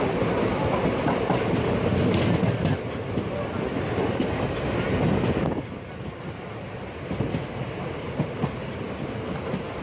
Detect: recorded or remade recorded